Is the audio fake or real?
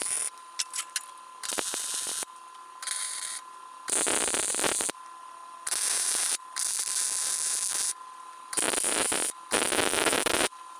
real